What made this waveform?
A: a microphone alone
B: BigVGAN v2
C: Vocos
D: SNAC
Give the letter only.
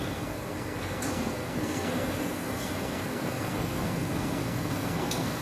D